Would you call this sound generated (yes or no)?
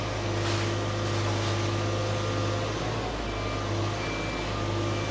no